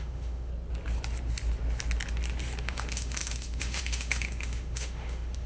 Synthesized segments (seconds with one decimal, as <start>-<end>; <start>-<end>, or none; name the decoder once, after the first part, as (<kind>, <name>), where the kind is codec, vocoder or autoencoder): 0.0-0.5 (autoencoder, DAC-VAE); 2.6-5.5